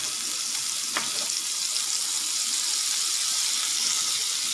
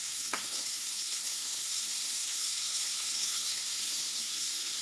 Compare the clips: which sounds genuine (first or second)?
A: first